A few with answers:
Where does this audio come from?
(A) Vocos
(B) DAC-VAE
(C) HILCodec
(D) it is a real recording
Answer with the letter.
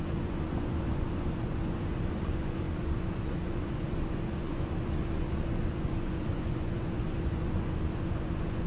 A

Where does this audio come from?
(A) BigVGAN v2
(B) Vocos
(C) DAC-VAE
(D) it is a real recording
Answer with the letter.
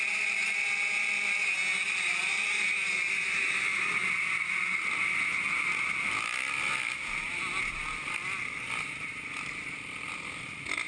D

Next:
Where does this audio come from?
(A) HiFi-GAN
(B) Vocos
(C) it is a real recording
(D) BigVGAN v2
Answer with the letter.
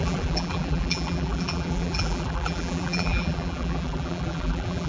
D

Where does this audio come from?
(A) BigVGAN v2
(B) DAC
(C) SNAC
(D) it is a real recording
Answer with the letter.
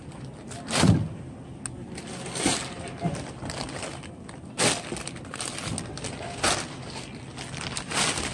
D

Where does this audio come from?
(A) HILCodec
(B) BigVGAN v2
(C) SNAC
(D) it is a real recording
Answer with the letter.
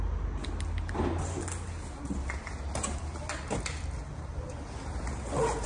D